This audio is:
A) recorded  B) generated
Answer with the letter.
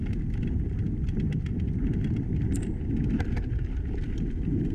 A